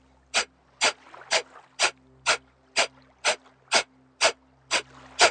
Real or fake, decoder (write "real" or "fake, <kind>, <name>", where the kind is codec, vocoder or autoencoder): real